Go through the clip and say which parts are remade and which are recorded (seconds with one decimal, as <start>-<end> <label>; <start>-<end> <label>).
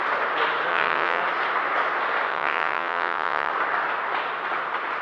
0.0-0.7 recorded; 0.7-1.2 remade; 1.2-2.3 recorded; 2.3-3.5 remade; 3.5-5.0 recorded